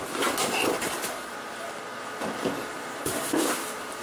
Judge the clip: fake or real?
real